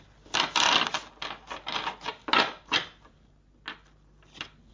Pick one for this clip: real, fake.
real